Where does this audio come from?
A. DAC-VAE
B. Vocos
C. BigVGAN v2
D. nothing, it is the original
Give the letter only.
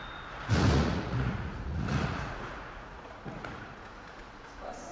B